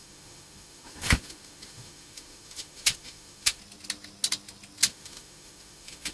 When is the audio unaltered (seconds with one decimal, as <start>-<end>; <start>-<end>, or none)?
3.6-4.9

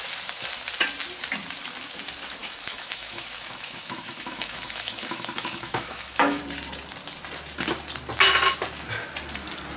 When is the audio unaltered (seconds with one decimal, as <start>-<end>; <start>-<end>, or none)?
0.0-2.4; 6.4-9.8

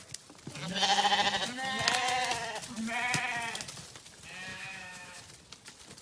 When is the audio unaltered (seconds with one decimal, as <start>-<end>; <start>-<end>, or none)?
0.0-4.5; 5.2-6.0

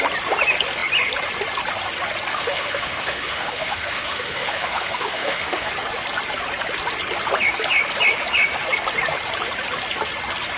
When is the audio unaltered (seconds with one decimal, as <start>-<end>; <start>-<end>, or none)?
0.0-2.3; 5.7-10.6

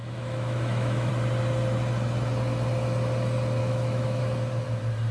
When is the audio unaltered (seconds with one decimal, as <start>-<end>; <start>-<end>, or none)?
1.1-3.6; 4.2-5.1